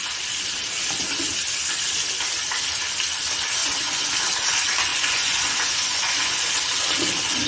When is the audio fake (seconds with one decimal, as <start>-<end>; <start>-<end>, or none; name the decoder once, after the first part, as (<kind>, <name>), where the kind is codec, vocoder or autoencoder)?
3.6-4.1 (vocoder, Vocos); 4.9-6.5